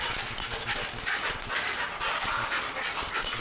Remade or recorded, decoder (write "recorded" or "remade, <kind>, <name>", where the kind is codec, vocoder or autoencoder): recorded